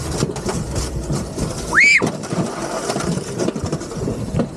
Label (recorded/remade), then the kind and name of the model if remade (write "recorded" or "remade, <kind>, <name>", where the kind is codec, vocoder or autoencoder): remade, vocoder, BigVGAN v2